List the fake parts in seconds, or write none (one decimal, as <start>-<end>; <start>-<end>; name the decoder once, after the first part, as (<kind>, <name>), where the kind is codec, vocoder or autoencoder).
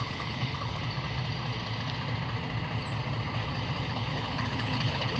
0.0-0.8 (codec, HILCodec); 3.9-5.2